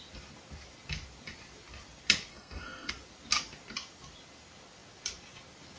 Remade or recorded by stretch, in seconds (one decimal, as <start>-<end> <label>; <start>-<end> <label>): 0.0-2.3 recorded; 2.3-2.9 remade; 2.9-5.8 recorded